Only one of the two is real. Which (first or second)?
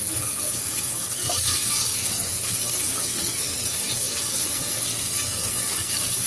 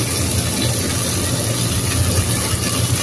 second